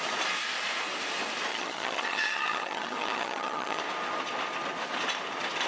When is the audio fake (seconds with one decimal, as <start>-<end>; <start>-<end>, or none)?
1.5-3.8